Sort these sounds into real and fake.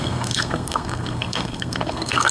fake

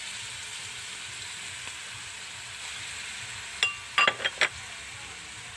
real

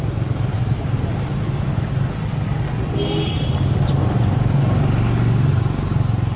real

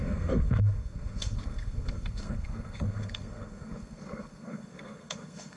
fake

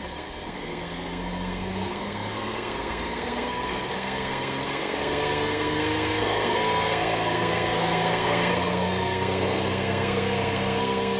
fake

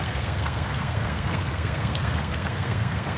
fake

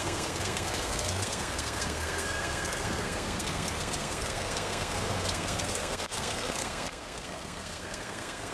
fake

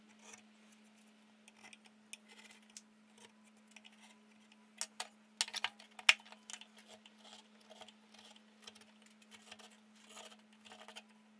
real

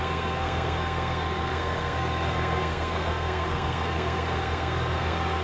fake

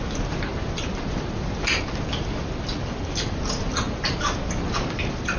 real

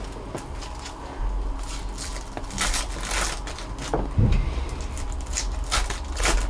real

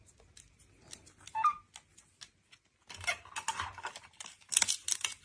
real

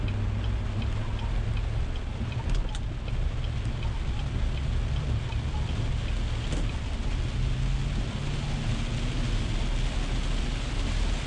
real